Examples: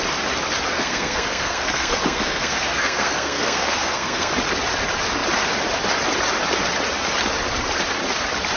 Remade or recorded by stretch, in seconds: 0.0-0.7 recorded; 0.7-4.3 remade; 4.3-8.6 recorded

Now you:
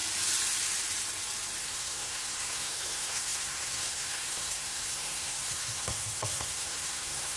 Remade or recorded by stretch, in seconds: 0.0-1.6 recorded; 1.6-7.4 remade

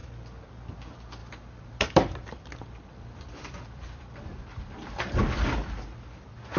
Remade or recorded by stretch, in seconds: 0.0-1.2 recorded; 1.2-5.2 remade; 5.2-6.6 recorded

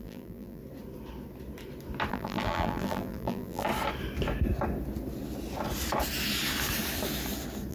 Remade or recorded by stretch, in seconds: 0.0-0.6 remade; 0.6-2.1 recorded; 2.1-3.7 remade; 3.7-7.7 recorded